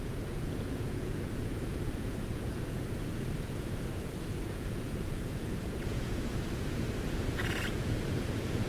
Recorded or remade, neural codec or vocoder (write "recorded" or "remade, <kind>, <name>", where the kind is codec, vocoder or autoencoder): remade, vocoder, Vocos